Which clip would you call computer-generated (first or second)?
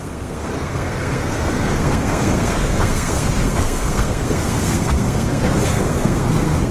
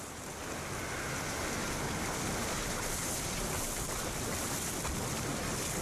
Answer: first